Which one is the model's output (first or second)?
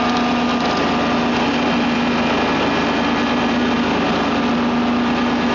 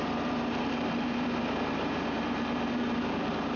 second